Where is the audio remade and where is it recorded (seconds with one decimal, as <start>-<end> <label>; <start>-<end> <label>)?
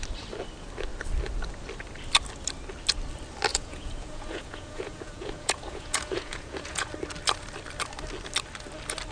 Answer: 0.0-3.5 recorded; 3.5-6.9 remade; 6.9-9.1 recorded